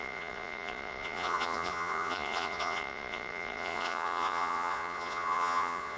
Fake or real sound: fake